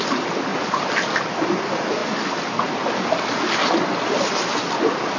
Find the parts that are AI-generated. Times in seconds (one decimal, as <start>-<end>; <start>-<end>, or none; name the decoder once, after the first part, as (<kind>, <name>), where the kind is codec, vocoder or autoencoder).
none